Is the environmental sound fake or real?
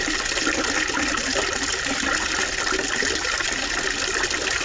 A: real